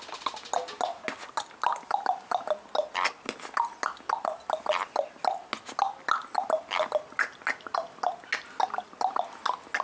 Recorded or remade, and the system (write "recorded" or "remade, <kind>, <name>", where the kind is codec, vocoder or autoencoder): recorded